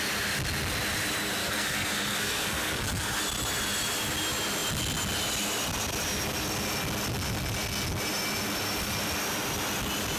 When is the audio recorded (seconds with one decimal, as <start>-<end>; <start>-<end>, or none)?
0.0-1.4; 3.2-10.2